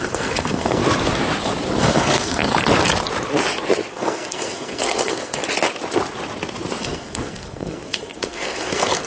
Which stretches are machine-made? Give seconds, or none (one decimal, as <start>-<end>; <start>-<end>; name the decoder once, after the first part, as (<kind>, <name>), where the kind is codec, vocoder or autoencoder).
0.0-0.8 (codec, SNAC); 1.8-2.5; 3.9-5.4; 6.8-9.1